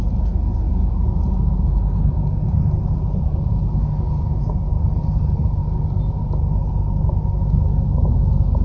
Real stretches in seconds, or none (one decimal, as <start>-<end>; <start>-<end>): 0.0-8.6